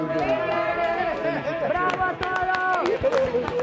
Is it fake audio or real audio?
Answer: real